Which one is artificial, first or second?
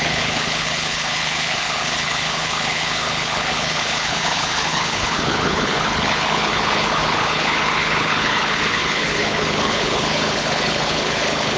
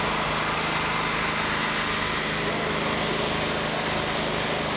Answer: first